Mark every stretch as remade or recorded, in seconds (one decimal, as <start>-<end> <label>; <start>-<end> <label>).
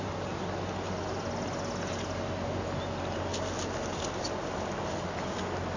0.0-5.8 recorded